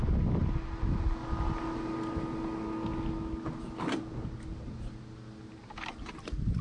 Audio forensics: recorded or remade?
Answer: recorded